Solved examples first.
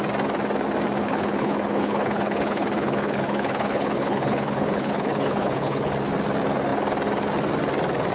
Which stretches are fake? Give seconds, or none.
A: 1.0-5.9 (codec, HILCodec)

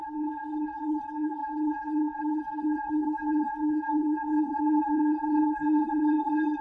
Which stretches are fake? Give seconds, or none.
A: 0.0-6.6 (codec, HILCodec)

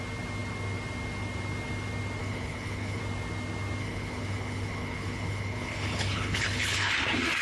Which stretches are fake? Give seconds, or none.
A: 2.2-3.0 (codec, HILCodec); 3.8-6.9

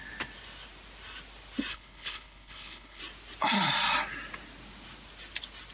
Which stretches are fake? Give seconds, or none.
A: 1.7-3.0 (codec, HILCodec)

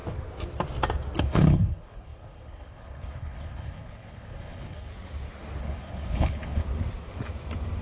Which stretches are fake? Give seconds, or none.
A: 1.2-4.9 (codec, HILCodec); 5.6-6.6

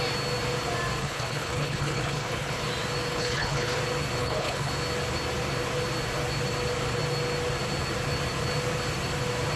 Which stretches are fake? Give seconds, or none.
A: 1.0-2.6 (codec, HILCodec); 3.1-3.8; 4.2-4.7